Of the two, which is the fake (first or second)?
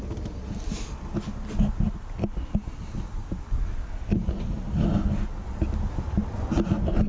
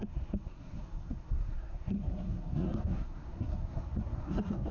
second